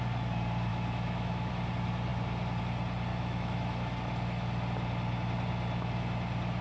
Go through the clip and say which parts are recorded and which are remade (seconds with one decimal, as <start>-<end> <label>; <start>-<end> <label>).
0.0-0.7 recorded; 0.7-1.5 remade; 1.5-3.1 recorded; 3.1-3.8 remade; 3.8-6.6 recorded